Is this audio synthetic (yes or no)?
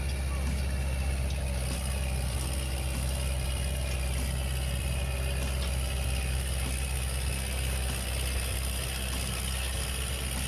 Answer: no